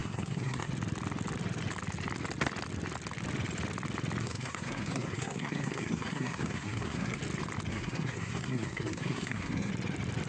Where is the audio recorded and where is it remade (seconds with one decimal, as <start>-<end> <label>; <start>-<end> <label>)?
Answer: 0.0-0.7 remade; 0.7-4.2 recorded; 4.2-7.2 remade; 7.2-7.7 recorded; 7.7-9.7 remade; 9.7-10.3 recorded

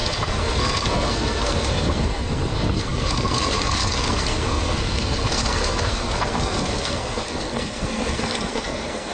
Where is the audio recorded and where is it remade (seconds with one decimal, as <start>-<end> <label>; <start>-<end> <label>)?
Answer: 0.0-9.1 remade

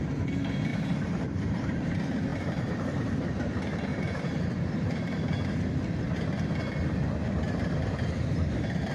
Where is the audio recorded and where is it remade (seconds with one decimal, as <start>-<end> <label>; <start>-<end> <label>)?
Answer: 0.0-0.7 recorded; 0.7-1.9 remade; 1.9-3.9 recorded; 3.9-5.2 remade; 5.2-8.9 recorded

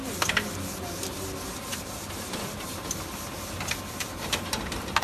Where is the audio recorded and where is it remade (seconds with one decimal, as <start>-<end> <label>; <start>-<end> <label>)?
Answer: 0.0-5.0 recorded

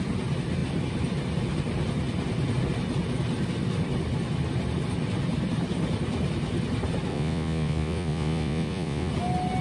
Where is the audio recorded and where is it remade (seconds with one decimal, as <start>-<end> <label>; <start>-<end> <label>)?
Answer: 0.0-7.1 recorded; 7.1-9.1 remade; 9.1-9.6 recorded